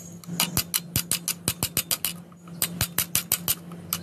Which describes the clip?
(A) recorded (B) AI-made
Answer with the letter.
A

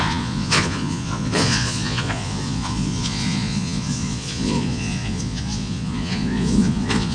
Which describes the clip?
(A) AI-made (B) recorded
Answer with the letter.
A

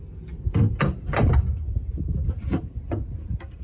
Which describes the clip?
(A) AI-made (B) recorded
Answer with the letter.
B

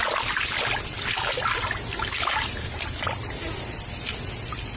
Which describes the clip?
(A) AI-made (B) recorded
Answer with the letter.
B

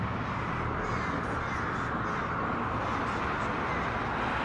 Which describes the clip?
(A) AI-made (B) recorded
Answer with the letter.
B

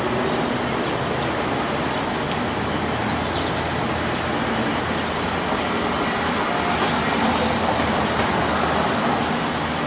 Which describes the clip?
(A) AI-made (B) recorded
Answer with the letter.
B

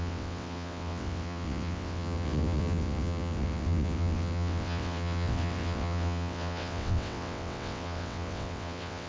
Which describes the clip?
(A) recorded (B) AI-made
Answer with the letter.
B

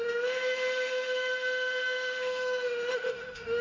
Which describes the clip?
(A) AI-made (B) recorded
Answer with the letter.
A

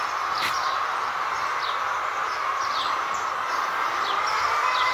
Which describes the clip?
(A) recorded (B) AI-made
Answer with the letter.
A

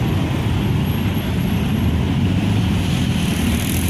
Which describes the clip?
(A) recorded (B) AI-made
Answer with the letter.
A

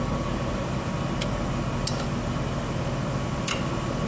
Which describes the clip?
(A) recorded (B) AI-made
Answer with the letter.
A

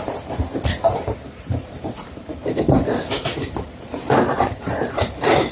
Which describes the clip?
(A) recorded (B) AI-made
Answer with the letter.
B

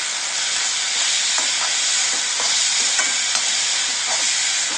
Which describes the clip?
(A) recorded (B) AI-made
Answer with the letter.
A